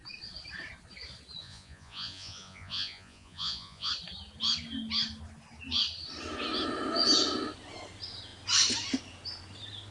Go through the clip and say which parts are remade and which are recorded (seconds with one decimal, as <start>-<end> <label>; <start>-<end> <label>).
0.0-1.4 recorded; 1.4-3.9 remade; 3.9-9.9 recorded